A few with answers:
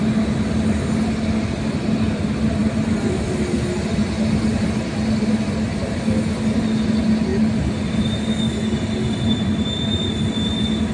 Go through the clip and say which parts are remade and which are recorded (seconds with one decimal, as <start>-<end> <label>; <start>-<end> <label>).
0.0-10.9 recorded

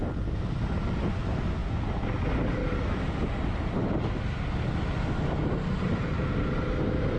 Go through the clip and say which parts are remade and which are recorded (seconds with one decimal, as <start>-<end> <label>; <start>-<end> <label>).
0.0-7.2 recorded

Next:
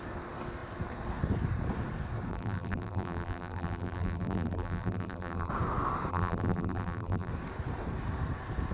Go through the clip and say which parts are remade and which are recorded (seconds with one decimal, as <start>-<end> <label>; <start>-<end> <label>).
0.0-2.3 recorded; 2.3-5.5 remade; 5.5-6.1 recorded; 6.1-7.3 remade; 7.3-8.7 recorded

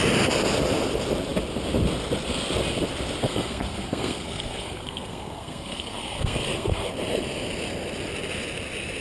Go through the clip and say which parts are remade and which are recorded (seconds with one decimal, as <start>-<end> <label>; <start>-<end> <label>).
0.0-3.2 recorded; 3.2-6.9 remade; 6.9-9.0 recorded

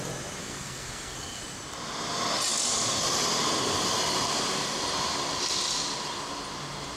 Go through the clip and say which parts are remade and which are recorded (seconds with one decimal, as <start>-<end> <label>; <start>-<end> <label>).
0.0-0.4 recorded; 0.4-1.4 remade; 1.4-7.0 recorded

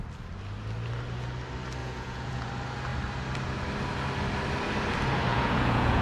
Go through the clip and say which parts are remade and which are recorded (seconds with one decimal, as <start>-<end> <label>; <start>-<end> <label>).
0.0-1.8 recorded; 1.8-2.5 remade; 2.5-5.3 recorded; 5.3-6.0 remade